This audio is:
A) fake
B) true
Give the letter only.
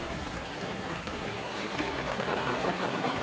A